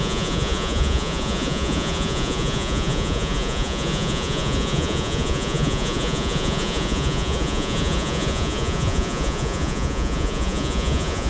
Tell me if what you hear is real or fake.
fake